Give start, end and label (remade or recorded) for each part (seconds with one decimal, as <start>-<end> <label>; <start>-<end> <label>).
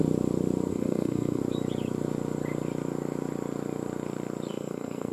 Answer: 0.0-0.7 recorded; 0.7-1.4 remade; 1.4-4.5 recorded; 4.5-5.1 remade